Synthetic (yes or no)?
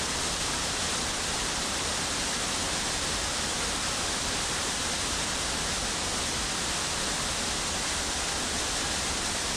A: no